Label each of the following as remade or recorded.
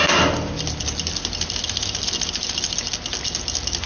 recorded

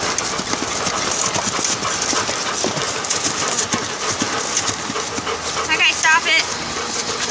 recorded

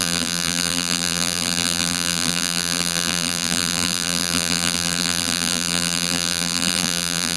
remade